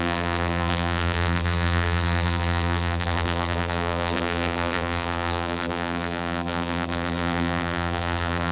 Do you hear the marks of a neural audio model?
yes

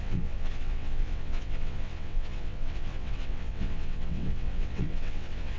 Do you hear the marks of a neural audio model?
yes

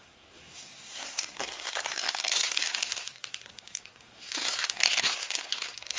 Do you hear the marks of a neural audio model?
yes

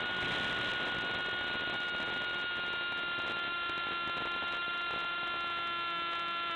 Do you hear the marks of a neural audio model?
no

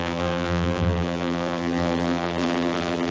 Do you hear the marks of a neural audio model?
yes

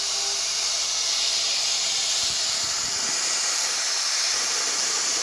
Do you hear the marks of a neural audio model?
no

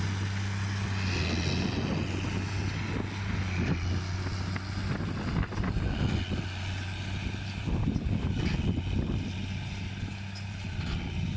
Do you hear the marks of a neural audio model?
no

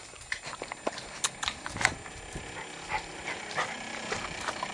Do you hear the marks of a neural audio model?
no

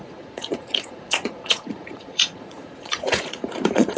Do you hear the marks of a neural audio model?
yes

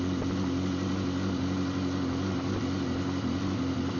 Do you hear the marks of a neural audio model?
no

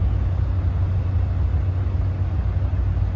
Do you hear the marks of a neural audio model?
no